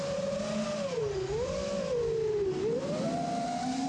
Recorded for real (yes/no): yes